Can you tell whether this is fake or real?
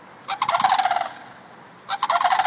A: real